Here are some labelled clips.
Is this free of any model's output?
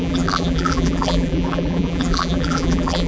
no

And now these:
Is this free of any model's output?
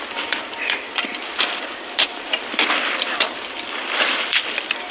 no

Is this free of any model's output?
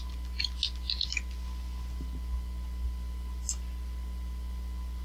yes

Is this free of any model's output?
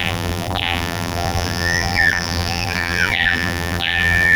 no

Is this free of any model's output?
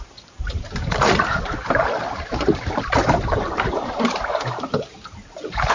no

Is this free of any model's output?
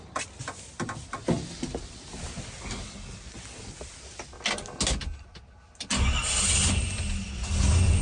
yes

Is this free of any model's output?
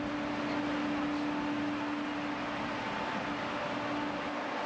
yes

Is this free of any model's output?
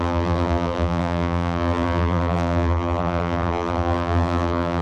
no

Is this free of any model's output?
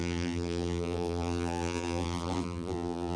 no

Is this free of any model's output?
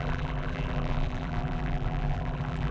no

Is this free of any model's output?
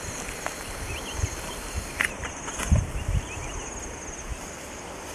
yes